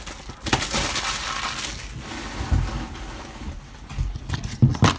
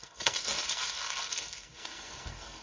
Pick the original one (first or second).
first